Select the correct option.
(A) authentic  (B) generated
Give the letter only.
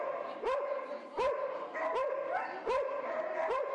A